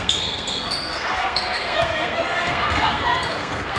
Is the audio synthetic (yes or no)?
yes